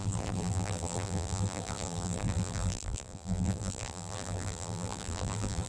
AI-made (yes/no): yes